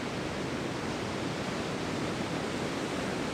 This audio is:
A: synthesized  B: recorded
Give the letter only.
B